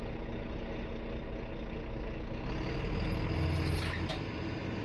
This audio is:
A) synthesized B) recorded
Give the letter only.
B